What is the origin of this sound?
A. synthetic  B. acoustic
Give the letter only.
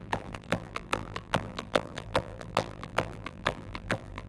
A